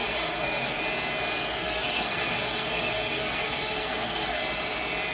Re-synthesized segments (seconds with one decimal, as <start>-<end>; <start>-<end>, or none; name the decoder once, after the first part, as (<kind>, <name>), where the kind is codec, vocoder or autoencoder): 0.0-0.8 (codec, SNAC); 1.6-4.4